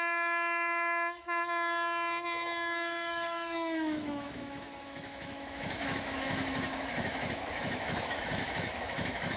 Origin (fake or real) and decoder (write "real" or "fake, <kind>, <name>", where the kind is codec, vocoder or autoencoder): fake, autoencoder, DAC-VAE